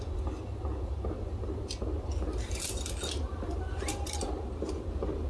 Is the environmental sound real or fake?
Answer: real